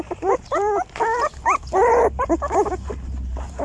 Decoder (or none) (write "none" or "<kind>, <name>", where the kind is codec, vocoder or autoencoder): vocoder, BigVGAN v2